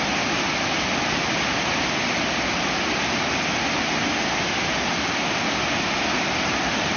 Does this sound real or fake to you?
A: real